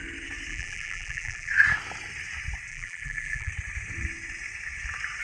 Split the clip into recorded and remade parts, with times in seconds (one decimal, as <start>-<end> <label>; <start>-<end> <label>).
0.0-0.5 recorded; 0.5-1.5 remade; 1.5-2.7 recorded; 2.7-3.5 remade; 3.5-5.2 recorded